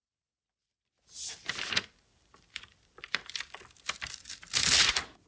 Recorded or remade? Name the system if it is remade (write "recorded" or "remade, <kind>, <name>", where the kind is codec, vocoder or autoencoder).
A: remade, vocoder, BigVGAN v2